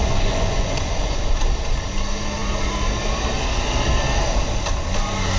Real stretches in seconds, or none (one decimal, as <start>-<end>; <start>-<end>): 1.2-5.4